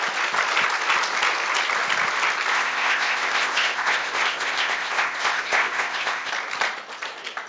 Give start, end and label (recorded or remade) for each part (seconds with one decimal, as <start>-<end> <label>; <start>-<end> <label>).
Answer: 0.0-2.5 recorded; 2.5-6.3 remade; 6.3-7.5 recorded

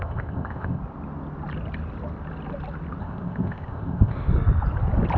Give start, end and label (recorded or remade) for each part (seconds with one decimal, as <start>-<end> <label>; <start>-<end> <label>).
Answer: 0.0-0.8 remade; 0.8-3.0 recorded; 3.0-4.3 remade; 4.3-5.2 recorded

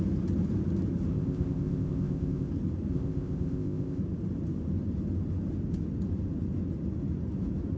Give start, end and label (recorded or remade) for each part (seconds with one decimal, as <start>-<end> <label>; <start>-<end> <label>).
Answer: 0.0-1.1 recorded; 1.1-2.5 remade; 2.5-2.9 recorded; 2.9-4.0 remade; 4.0-7.8 recorded

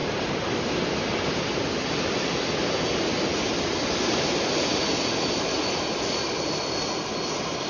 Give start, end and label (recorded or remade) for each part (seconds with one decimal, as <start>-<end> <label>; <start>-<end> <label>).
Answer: 0.0-7.7 recorded